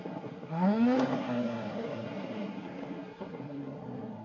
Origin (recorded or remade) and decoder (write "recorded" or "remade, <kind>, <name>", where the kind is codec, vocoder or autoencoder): remade, codec, SNAC